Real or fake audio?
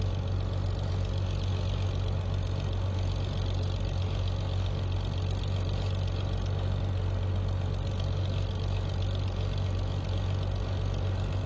real